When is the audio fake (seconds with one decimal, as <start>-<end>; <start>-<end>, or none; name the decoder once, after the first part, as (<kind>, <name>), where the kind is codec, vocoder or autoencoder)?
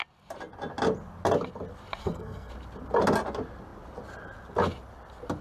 2.0-2.5 (codec, SNAC)